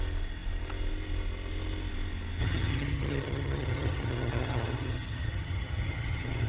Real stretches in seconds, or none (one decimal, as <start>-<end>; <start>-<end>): 0.0-2.4

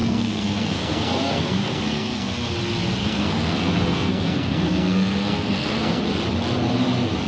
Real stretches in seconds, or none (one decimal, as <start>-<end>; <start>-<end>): 2.3-3.0; 6.0-7.3

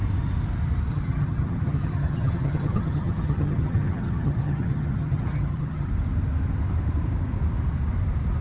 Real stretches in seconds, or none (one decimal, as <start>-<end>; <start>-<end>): 0.0-0.9; 5.9-8.4

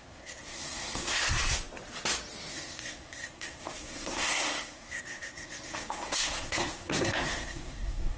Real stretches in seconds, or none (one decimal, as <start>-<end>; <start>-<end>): 1.4-2.5

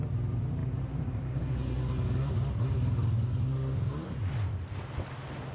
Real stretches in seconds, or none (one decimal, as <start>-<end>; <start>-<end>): 0.0-0.6; 1.4-5.5

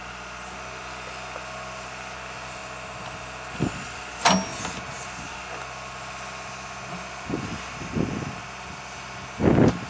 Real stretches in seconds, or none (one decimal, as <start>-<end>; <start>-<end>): 0.0-9.9